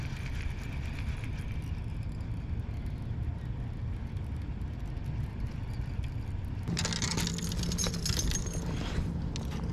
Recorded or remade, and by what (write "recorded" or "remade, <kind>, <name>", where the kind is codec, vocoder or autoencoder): recorded